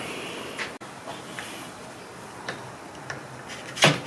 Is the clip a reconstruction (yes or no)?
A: no